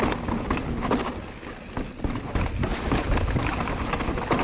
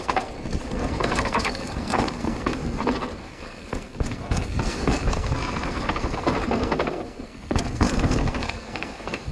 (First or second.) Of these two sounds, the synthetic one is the second